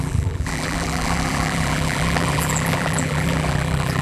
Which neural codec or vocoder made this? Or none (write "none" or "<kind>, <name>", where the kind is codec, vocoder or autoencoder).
vocoder, BigVGAN v2